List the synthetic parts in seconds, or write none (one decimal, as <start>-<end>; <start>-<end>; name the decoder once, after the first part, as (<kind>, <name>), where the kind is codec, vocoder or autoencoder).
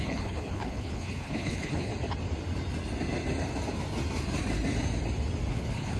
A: 0.0-1.9 (codec, HILCodec); 5.5-6.0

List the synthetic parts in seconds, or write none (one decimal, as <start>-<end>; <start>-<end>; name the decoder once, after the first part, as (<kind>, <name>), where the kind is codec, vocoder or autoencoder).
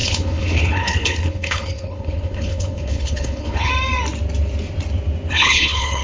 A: 0.0-3.7 (codec, HILCodec); 5.3-6.0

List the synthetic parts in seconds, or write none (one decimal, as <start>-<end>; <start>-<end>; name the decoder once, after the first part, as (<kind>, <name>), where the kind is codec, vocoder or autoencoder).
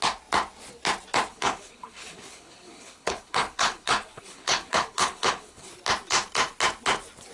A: 1.3-5.7 (codec, HILCodec)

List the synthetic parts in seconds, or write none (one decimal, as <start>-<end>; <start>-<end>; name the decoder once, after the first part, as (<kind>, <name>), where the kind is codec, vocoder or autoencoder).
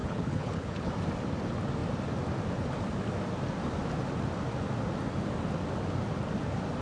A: 0.0-0.9 (codec, HILCodec)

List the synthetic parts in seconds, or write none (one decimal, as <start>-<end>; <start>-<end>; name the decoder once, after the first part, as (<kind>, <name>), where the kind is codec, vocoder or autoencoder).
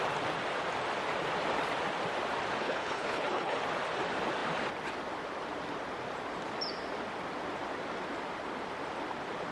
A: 2.6-3.6 (codec, HILCodec)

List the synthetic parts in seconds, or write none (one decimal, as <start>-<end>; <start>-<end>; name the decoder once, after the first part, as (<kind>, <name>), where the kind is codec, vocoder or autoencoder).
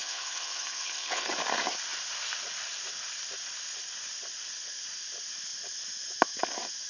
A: 0.0-1.3 (codec, HILCodec)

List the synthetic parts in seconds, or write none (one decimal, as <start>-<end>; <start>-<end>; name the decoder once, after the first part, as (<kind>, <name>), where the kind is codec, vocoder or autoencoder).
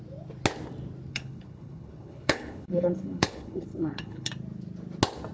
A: 1.1-4.3 (codec, HILCodec)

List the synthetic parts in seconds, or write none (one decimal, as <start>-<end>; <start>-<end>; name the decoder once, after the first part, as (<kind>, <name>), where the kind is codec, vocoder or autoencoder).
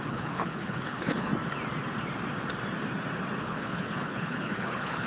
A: 0.0-1.3 (codec, HILCodec); 3.4-5.1